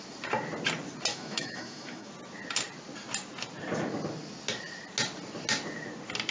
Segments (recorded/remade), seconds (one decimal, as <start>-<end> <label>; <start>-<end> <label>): 0.0-1.1 recorded; 1.1-2.1 remade; 2.1-6.3 recorded